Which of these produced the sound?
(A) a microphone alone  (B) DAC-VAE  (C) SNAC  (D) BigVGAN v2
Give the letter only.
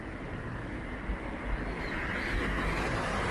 A